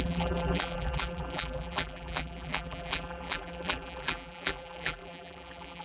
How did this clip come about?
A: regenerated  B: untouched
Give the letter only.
A